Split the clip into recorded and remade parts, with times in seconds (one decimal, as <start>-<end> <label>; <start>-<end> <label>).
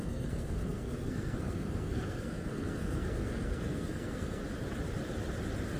0.0-4.4 remade; 4.4-5.8 recorded